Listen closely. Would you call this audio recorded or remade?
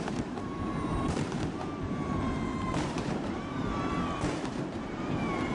remade